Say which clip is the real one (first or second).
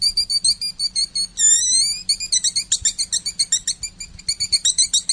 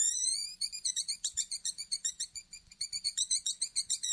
first